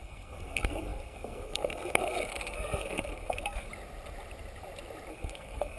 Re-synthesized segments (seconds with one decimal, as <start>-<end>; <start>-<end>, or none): 0.0-3.7; 5.1-5.8